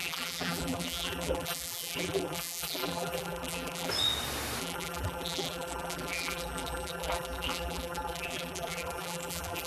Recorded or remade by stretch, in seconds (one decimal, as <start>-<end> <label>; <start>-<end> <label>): 0.0-3.9 remade; 3.9-4.6 recorded; 4.6-9.7 remade